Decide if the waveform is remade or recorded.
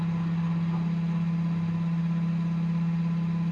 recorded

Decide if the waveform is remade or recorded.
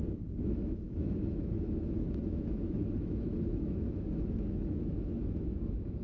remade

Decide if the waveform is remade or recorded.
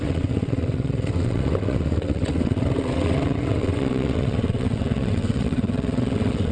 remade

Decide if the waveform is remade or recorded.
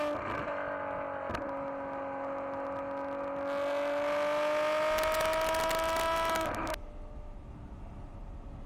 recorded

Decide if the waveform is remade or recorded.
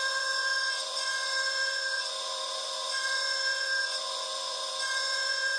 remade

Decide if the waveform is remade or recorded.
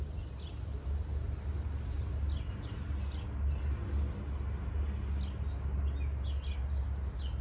recorded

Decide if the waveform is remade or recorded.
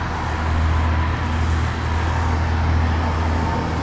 recorded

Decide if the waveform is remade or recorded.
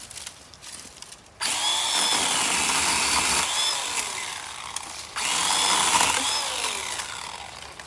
recorded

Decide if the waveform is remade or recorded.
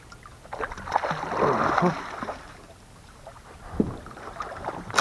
recorded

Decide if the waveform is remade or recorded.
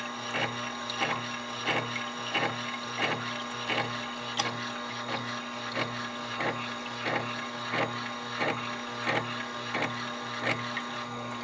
recorded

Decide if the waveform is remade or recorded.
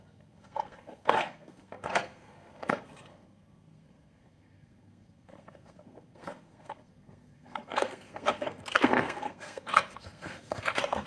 remade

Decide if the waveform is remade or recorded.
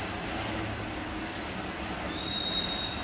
recorded